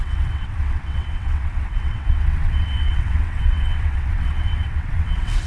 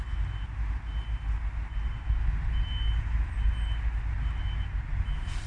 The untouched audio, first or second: second